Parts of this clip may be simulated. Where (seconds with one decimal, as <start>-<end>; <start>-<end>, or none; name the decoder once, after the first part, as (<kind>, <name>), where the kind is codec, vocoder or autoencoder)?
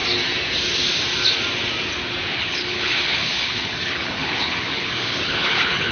2.3-5.9 (codec, HILCodec)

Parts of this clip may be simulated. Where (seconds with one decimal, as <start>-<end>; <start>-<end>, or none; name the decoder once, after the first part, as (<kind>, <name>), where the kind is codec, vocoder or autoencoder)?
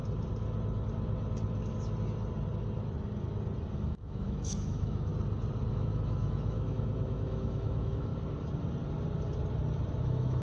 3.7-5.1 (autoencoder, DAC-VAE); 5.7-8.1; 10.0-10.4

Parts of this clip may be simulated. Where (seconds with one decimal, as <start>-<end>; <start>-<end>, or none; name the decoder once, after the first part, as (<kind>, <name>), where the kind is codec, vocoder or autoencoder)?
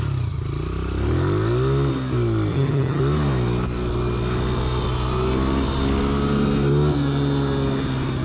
2.5-3.0 (vocoder, HiFi-GAN)